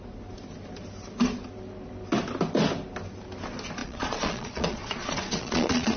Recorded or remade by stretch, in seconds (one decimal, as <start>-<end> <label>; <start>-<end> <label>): 0.0-3.8 recorded; 3.8-6.0 remade